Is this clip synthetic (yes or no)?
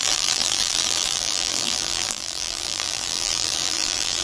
yes